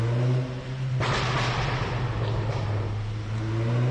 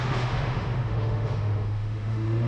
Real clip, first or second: first